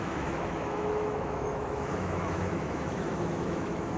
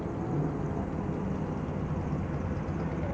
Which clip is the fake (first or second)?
first